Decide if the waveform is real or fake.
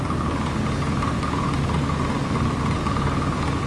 real